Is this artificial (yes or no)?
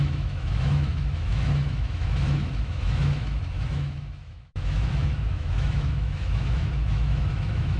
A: yes